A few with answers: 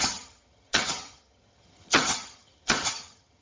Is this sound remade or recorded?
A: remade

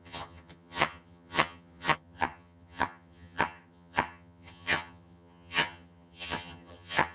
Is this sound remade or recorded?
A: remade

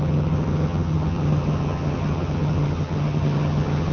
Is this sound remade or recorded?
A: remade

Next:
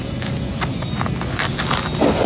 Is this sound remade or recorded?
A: recorded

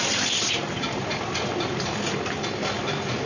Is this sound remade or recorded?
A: recorded